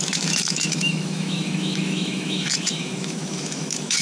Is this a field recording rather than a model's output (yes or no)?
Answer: no